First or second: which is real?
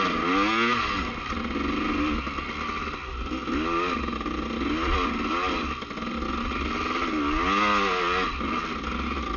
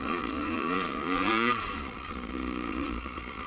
first